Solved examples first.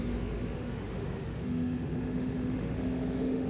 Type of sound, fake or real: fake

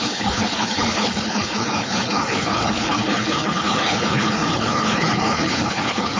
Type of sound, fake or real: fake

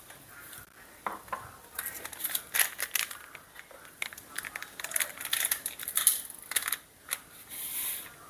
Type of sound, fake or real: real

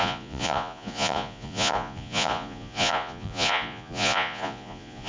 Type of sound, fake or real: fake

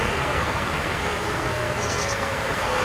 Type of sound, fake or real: fake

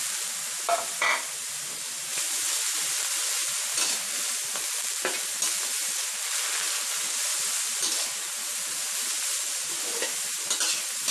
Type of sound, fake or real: real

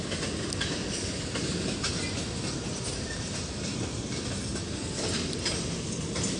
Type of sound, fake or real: real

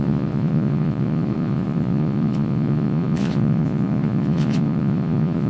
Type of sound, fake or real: fake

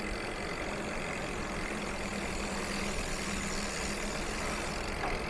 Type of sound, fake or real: real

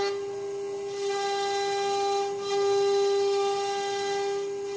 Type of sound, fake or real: real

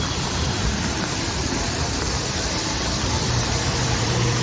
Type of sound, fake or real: fake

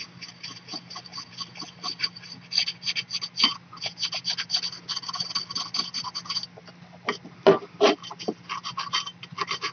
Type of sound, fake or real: real